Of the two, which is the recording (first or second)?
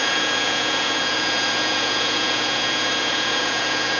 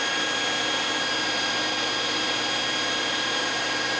second